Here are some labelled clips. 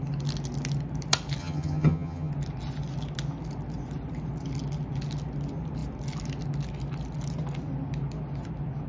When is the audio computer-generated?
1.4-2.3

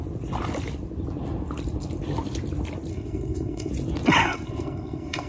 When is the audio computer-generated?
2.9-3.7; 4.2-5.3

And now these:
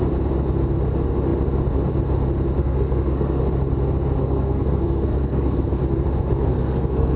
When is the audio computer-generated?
2.6-3.4; 4.2-5.8; 6.5-7.2